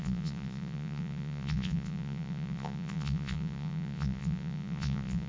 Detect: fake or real fake